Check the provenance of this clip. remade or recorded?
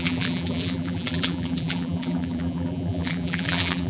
remade